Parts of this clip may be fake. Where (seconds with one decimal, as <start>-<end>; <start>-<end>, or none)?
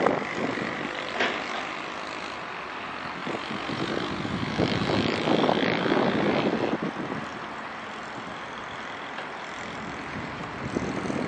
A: none